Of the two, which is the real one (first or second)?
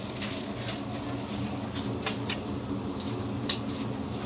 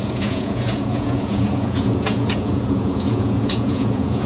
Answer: first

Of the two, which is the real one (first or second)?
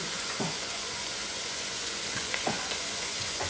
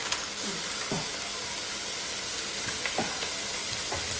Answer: second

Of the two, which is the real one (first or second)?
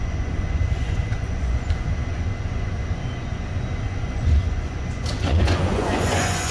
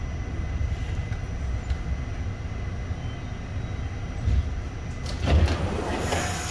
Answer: second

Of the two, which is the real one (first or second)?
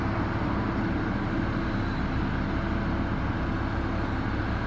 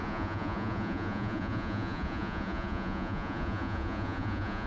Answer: first